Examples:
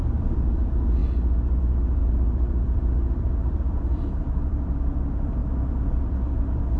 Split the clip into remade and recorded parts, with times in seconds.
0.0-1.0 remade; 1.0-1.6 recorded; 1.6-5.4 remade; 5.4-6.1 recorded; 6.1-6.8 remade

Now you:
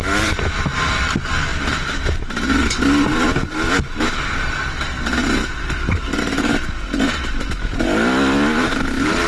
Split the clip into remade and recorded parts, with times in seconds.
0.0-5.2 recorded; 5.2-6.4 remade; 6.4-9.3 recorded

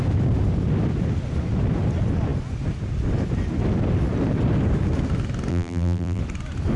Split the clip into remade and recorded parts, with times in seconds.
0.0-5.5 recorded; 5.5-6.2 remade; 6.2-6.8 recorded

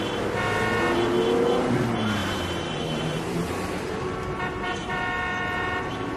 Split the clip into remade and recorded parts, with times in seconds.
0.0-2.2 recorded; 2.2-6.2 remade

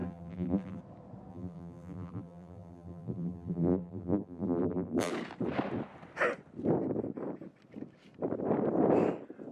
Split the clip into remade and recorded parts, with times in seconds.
0.0-0.8 remade; 0.8-1.3 recorded; 1.3-5.1 remade; 5.1-9.5 recorded

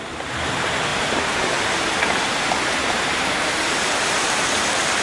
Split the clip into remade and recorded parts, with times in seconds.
0.0-0.9 recorded; 0.9-3.9 remade; 3.9-5.0 recorded